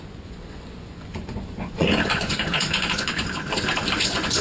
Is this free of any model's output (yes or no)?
no